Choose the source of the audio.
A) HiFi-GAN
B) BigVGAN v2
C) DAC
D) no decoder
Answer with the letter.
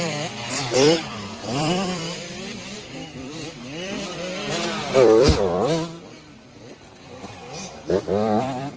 B